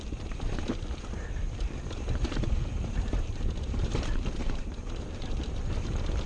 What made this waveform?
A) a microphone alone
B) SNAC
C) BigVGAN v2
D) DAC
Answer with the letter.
C